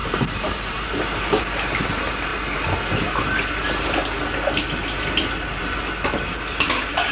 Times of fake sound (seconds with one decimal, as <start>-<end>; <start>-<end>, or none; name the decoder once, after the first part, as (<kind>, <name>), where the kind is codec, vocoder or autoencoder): 0.0-1.4 (vocoder, BigVGAN v2)